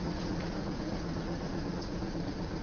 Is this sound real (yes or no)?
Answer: no